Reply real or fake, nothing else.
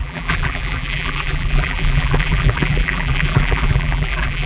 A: fake